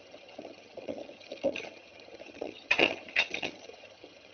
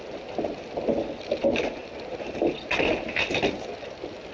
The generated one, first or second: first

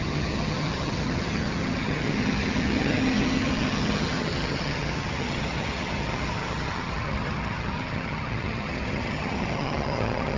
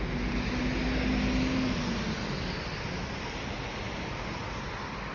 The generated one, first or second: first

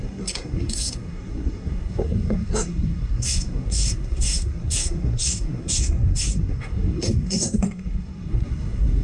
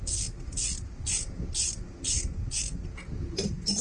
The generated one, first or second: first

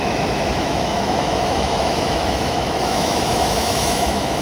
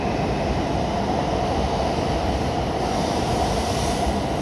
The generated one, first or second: first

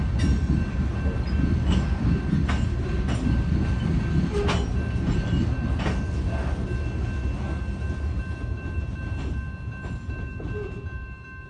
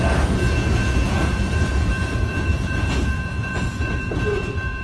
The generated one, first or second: second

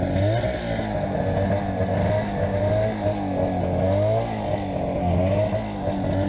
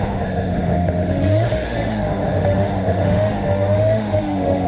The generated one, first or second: second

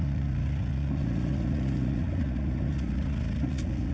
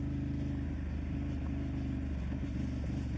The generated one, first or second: first